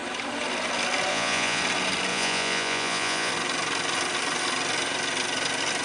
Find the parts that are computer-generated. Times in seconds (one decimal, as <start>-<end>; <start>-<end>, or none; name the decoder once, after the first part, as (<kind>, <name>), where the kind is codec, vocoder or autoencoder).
1.1-1.6 (vocoder, Vocos); 2.1-3.3